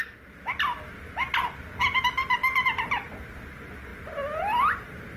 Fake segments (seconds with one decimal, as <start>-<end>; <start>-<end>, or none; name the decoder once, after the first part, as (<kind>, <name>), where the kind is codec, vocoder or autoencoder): none